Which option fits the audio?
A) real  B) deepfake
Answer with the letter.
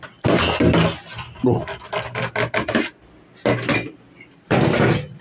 A